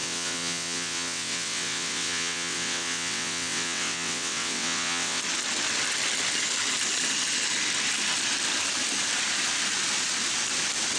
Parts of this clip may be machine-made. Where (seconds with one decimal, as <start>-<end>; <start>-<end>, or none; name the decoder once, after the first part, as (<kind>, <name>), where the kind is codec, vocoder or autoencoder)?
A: 0.0-5.2 (vocoder, WaveNeXt)